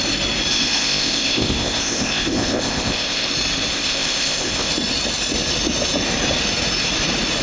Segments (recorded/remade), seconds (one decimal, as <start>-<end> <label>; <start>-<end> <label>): 0.0-0.5 recorded; 0.5-3.3 remade; 3.3-3.7 recorded; 3.7-4.7 remade; 4.7-7.4 recorded